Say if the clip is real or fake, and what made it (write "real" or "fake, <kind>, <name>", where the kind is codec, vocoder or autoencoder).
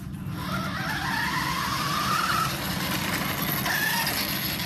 real